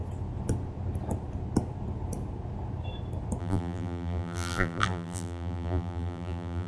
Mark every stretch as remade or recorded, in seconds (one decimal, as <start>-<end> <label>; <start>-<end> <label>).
0.0-3.4 recorded; 3.4-6.7 remade